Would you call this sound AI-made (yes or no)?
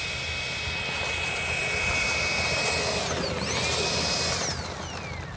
no